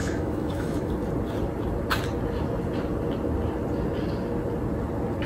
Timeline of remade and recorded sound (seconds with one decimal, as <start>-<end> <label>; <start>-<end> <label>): 0.0-0.9 remade; 0.9-5.3 recorded